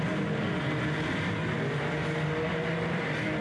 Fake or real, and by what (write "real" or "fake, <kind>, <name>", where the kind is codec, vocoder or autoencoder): real